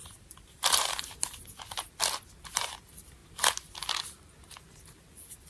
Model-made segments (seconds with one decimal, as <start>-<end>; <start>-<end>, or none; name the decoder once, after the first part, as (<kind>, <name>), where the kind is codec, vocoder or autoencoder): 0.0-1.2 (vocoder, BigVGAN v2)